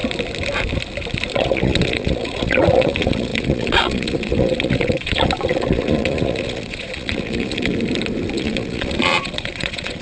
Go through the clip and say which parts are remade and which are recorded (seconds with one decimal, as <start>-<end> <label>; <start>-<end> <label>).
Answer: 0.0-1.3 recorded; 1.3-7.7 remade; 7.7-8.3 recorded; 8.3-10.0 remade